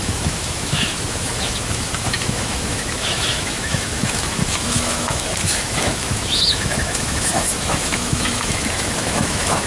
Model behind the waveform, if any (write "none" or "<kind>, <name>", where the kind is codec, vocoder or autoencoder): autoencoder, DAC-VAE